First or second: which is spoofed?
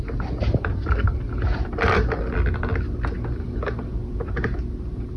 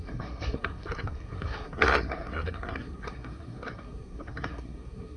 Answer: second